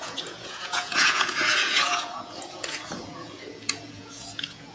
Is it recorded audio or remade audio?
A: remade